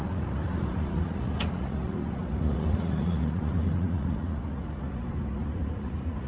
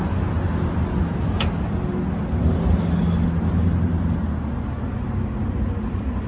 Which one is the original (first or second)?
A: second